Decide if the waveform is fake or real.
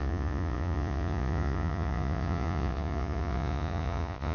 fake